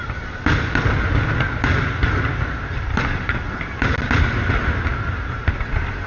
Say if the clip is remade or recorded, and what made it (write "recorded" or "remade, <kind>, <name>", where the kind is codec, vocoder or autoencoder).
recorded